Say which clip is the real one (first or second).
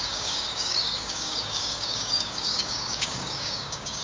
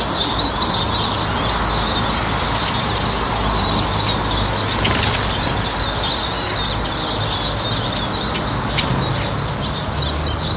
second